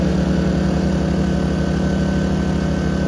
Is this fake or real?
real